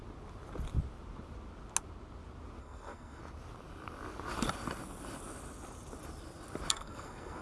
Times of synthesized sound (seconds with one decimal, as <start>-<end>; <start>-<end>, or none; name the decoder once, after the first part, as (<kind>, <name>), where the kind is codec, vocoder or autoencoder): 2.6-3.2 (codec, SNAC); 6.7-7.4